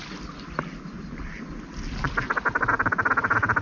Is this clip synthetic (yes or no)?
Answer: no